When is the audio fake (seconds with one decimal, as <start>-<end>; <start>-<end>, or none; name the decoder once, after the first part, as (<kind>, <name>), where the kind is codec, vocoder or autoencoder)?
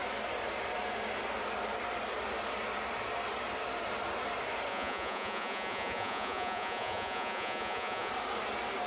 4.7-8.1 (vocoder, Vocos)